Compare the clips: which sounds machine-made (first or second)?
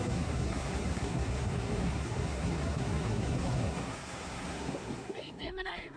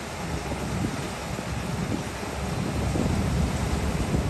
first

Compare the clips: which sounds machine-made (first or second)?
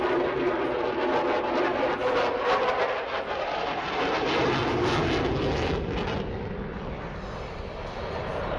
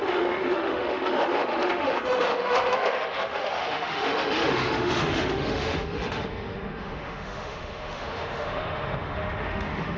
second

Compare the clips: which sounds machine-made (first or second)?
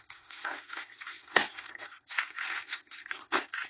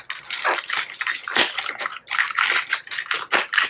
first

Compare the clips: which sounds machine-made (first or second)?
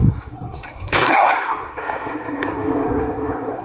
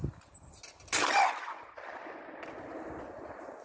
first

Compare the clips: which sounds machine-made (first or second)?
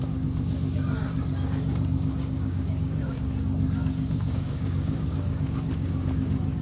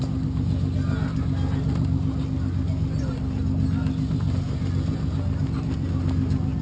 first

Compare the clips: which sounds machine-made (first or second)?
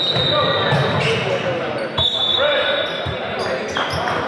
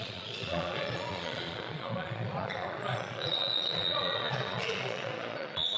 second